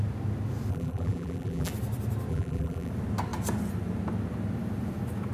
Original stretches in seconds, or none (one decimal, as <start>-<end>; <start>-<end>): 0.0-0.7; 1.7-2.3; 2.9-5.3